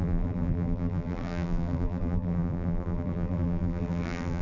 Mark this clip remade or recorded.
remade